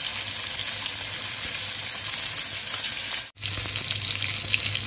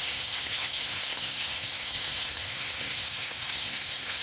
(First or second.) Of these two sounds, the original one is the first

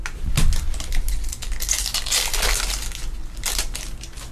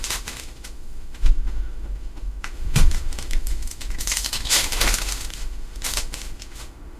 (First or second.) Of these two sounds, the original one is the first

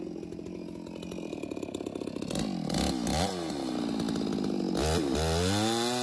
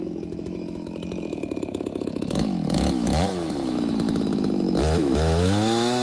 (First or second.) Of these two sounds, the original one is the first